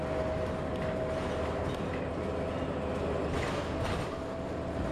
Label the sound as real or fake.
real